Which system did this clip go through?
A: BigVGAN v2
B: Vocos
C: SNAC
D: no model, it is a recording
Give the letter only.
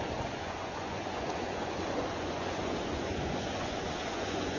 B